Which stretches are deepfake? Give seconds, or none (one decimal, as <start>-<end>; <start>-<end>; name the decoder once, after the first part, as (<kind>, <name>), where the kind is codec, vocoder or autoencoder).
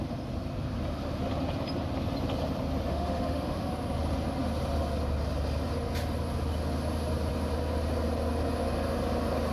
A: 2.9-3.7 (autoencoder, DAC-VAE)